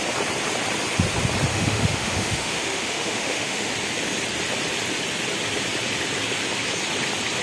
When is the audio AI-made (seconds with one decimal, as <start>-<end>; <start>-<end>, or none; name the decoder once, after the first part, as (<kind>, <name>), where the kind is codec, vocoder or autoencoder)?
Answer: 1.5-3.7 (autoencoder, DAC-VAE)

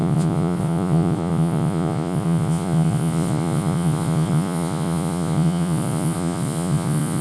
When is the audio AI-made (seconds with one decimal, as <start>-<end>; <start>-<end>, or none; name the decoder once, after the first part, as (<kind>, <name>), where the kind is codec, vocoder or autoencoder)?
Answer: 0.0-7.2 (vocoder, Vocos)

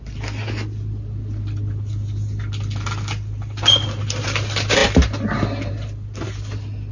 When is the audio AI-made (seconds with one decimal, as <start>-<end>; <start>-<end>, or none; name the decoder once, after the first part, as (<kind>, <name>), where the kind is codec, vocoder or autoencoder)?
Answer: none

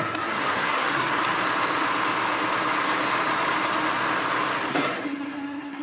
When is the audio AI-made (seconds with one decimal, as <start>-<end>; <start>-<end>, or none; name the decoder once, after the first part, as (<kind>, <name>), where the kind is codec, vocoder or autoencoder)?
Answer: 0.0-1.2 (codec, SNAC); 4.7-5.8

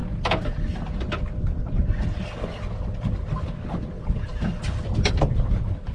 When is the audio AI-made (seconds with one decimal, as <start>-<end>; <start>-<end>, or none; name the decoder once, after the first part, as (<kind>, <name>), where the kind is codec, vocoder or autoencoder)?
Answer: none